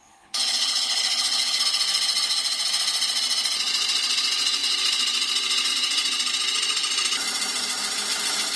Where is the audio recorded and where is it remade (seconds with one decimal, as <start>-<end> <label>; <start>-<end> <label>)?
0.0-1.6 remade; 1.6-8.6 recorded